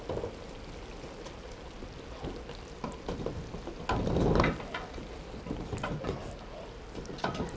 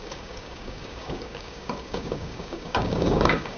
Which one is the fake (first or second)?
second